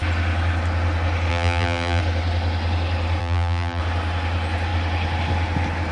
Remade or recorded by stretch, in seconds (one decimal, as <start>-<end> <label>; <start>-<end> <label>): 0.0-1.3 recorded; 1.3-2.0 remade; 2.0-3.2 recorded; 3.2-3.8 remade; 3.8-5.9 recorded